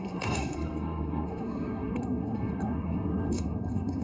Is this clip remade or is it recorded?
remade